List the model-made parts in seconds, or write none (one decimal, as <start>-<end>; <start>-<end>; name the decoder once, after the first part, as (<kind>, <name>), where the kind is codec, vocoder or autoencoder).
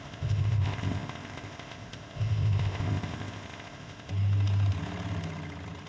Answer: 0.0-4.1 (codec, ZipCodec)